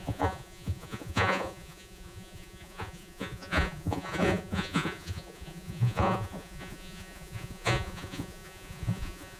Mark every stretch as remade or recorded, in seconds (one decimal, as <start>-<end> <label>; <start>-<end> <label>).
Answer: 0.0-9.4 remade